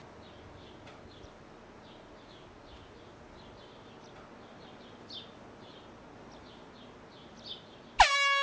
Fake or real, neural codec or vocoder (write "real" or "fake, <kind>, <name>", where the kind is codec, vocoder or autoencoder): real